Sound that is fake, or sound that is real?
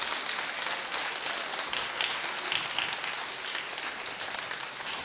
real